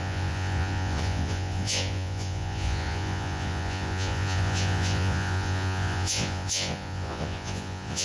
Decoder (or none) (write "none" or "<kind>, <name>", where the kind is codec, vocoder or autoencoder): vocoder, Vocos